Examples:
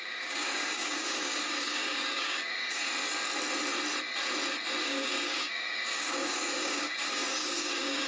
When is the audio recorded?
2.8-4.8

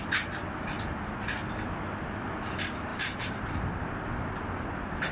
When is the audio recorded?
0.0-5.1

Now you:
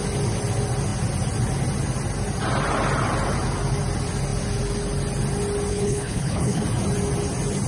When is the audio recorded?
0.0-5.7; 6.6-7.7

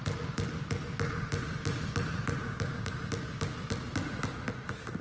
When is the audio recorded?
0.0-2.4; 3.1-5.0